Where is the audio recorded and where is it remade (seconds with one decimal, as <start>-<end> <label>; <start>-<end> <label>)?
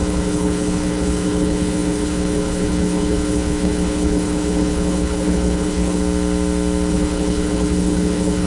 0.0-6.0 remade; 6.0-6.9 recorded; 6.9-8.5 remade